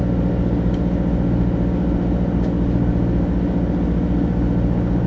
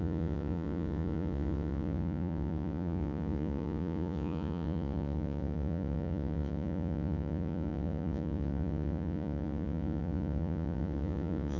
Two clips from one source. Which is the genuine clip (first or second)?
first